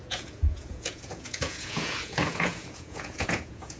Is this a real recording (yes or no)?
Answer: no